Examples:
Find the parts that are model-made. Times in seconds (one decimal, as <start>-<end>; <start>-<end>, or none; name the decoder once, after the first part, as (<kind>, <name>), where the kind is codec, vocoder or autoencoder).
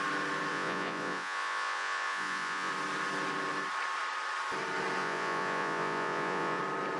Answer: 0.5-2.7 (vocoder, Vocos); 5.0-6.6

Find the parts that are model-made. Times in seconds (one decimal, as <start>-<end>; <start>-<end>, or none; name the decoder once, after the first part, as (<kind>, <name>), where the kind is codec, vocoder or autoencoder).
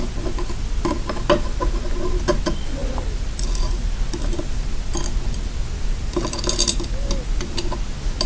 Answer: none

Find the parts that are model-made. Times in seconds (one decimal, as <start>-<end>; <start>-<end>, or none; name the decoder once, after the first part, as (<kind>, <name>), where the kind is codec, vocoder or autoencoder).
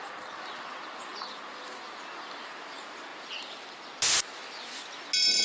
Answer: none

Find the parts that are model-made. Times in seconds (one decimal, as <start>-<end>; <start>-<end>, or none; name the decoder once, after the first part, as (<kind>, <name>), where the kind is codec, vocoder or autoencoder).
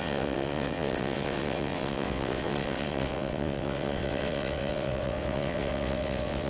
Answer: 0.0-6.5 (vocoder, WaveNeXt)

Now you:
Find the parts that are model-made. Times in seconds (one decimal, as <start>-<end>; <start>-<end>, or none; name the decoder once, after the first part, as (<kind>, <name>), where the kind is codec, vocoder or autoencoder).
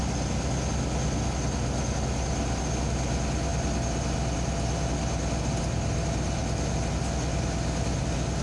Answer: none